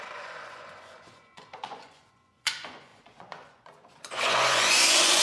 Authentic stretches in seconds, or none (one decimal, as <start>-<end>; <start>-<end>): none